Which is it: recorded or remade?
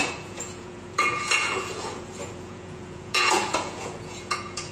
remade